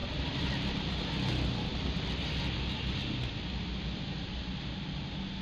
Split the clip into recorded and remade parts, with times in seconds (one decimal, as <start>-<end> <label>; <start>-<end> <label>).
0.0-1.1 remade; 1.1-1.7 recorded; 1.7-2.4 remade; 2.4-5.4 recorded